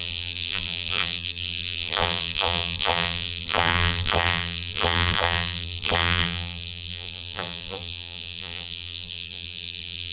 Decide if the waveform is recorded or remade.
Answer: remade